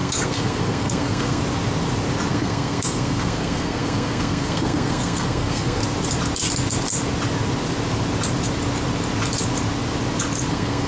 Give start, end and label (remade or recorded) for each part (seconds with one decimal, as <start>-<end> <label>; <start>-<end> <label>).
0.0-1.4 remade; 1.4-2.3 recorded; 2.3-5.8 remade; 5.8-10.5 recorded; 10.5-10.9 remade